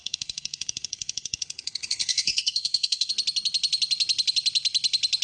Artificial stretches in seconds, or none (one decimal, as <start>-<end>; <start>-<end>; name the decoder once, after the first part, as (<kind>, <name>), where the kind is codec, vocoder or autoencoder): 0.0-3.1 (codec, SNAC)